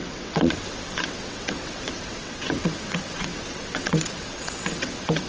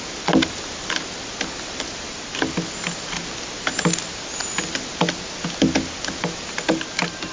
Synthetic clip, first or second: first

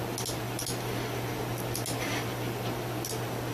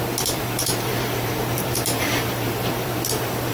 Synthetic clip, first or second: second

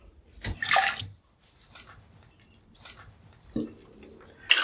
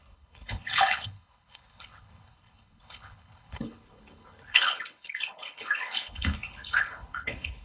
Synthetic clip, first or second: second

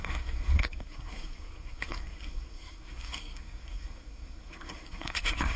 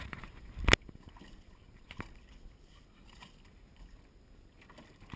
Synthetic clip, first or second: first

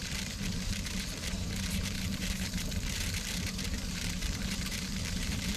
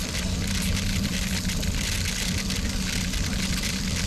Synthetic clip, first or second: first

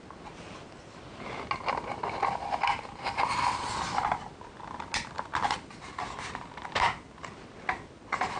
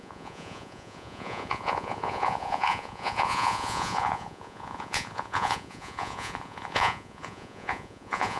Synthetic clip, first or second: second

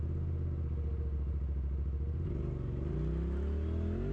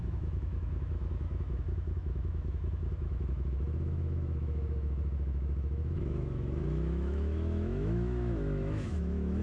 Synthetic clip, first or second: second